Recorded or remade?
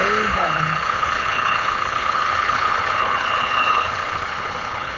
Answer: remade